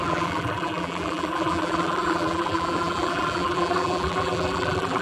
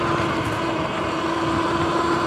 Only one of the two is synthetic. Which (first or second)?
first